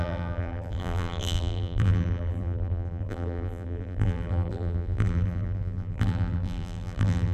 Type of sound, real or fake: fake